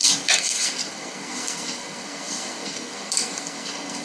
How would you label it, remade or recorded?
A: remade